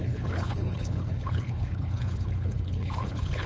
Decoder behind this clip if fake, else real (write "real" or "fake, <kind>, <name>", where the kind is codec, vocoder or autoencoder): fake, codec, HILCodec